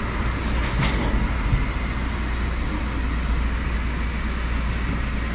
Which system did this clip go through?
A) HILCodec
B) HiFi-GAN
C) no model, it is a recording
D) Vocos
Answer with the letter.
C